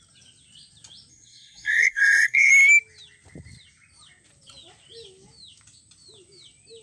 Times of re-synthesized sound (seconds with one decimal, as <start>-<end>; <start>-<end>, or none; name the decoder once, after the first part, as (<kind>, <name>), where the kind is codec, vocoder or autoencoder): 1.1-2.5 (codec, SNAC)